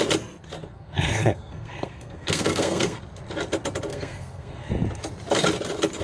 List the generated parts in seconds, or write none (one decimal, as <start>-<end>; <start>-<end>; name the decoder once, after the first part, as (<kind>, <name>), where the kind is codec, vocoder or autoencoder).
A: 0.7-3.0 (codec, SNAC); 3.9-4.7